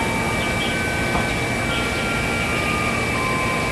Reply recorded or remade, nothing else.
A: recorded